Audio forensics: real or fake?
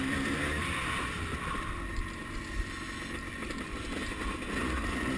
real